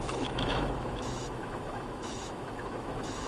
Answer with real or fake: fake